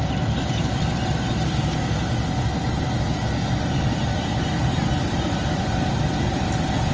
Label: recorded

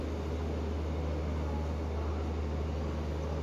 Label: recorded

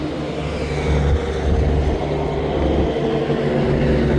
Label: recorded